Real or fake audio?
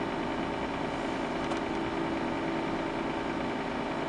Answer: real